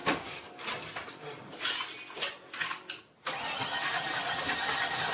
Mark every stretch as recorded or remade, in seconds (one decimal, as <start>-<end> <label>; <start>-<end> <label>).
0.0-0.6 remade; 0.6-5.1 recorded